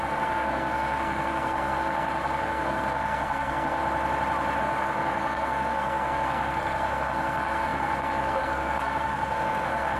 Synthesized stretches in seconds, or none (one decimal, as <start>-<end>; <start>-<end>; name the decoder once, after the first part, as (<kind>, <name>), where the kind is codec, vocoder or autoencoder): 0.0-3.8 (codec, SNAC); 4.6-10.0